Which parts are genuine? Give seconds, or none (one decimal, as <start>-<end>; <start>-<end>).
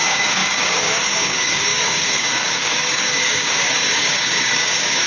none